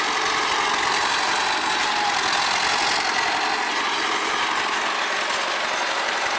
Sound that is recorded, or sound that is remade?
recorded